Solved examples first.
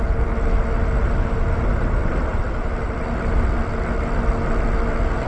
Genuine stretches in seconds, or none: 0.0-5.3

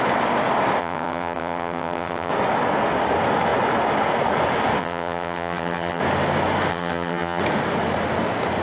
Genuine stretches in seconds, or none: 0.0-0.8; 2.3-4.8; 6.0-6.7; 7.4-8.6

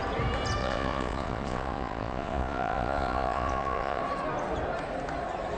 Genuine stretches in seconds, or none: 0.0-0.6; 4.0-5.6

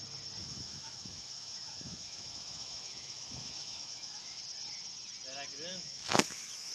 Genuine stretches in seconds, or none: 0.0-0.4; 4.4-5.7